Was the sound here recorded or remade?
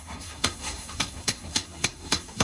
remade